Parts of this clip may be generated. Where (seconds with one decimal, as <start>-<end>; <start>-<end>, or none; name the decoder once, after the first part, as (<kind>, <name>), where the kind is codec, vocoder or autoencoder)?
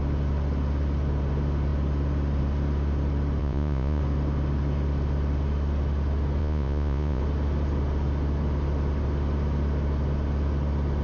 3.4-4.0 (vocoder, Vocos); 6.4-7.2